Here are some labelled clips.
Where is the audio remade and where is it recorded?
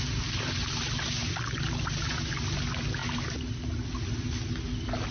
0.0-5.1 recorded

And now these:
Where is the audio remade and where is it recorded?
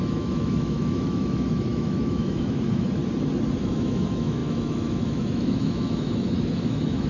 0.0-3.0 remade; 3.0-3.6 recorded; 3.6-7.1 remade